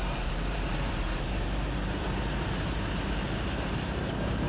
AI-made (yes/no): yes